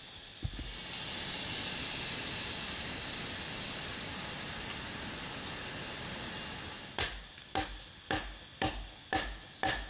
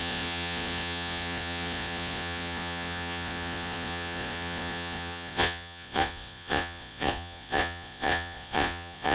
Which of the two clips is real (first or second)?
first